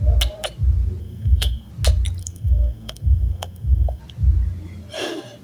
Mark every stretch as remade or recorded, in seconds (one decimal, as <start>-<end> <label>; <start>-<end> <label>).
0.0-1.0 recorded; 1.0-1.7 remade; 1.7-2.2 recorded; 2.2-4.0 remade; 4.0-5.4 recorded